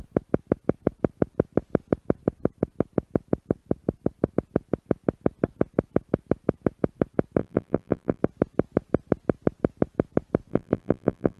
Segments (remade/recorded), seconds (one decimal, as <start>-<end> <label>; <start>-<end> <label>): 0.0-7.4 recorded; 7.4-8.2 remade; 8.2-10.5 recorded; 10.5-11.4 remade